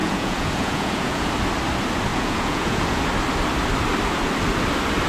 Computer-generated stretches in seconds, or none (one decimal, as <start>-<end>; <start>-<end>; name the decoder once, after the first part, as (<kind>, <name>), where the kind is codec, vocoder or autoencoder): 0.0-1.3 (vocoder, Vocos); 2.1-3.0